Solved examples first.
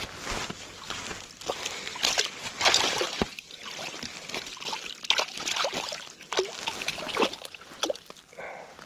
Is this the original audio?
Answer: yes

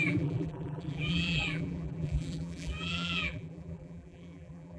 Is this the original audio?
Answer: no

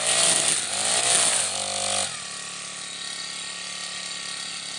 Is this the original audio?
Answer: yes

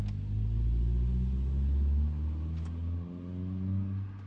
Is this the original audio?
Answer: yes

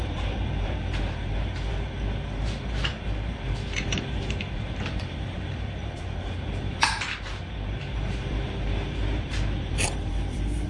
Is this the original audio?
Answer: no